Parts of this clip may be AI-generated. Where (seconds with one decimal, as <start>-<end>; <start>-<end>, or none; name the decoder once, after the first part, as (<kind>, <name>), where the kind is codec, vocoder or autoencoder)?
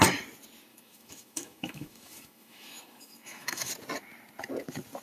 0.7-3.7 (autoencoder, DAC-VAE)